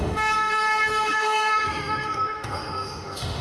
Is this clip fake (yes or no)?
yes